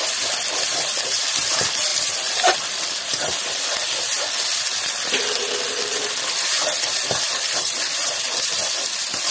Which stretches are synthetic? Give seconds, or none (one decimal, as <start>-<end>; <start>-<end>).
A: 0.0-9.3